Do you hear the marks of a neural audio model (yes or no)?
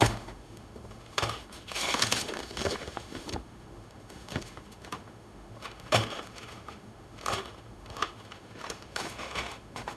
yes